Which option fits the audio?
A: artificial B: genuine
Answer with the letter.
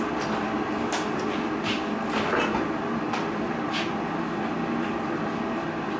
B